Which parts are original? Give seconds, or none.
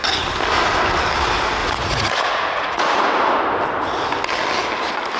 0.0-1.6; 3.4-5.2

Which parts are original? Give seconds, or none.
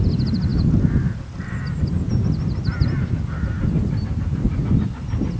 0.0-5.4